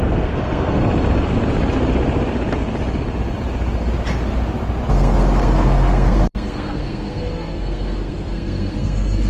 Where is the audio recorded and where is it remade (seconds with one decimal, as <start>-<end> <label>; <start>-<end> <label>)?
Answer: 0.0-0.8 remade; 0.8-4.9 recorded; 4.9-9.3 remade